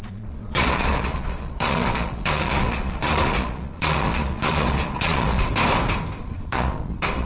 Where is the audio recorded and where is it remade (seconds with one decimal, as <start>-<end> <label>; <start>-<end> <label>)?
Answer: 0.0-5.5 remade; 5.5-6.2 recorded; 6.2-7.3 remade